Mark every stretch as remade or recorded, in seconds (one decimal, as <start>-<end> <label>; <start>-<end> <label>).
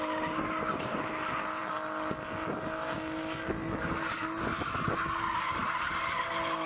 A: 0.0-6.7 recorded